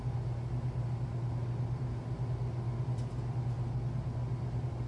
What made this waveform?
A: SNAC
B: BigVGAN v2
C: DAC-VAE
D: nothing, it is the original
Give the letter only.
D